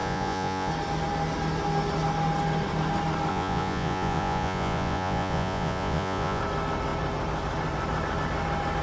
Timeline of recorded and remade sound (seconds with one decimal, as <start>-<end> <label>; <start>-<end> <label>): 0.0-0.7 remade; 0.7-3.3 recorded; 3.3-6.4 remade; 6.4-8.8 recorded